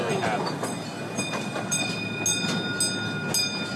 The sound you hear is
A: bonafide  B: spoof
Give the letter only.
A